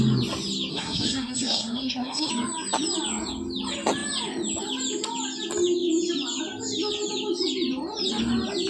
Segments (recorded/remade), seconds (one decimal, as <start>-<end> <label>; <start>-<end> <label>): 0.0-0.7 recorded; 0.7-2.3 remade; 2.3-8.7 recorded